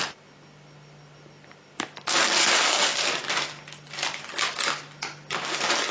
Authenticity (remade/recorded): recorded